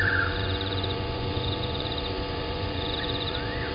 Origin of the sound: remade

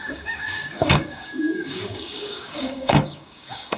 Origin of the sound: remade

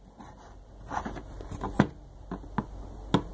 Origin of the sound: recorded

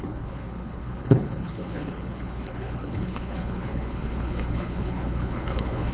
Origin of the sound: remade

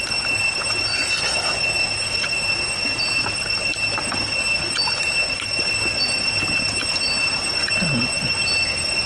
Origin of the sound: recorded